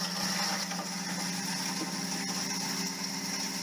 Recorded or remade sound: recorded